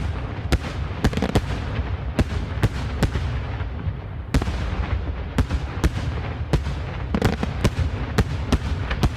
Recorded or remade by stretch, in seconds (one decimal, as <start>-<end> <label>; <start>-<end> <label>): 0.0-9.2 recorded